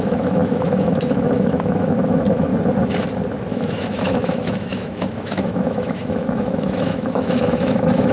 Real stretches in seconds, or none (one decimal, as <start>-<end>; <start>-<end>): 2.5-3.5